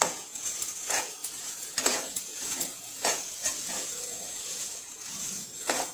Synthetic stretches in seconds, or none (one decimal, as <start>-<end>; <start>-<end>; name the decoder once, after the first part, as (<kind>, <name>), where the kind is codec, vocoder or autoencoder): 0.0-5.9 (vocoder, Vocos)